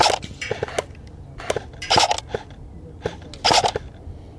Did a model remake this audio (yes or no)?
no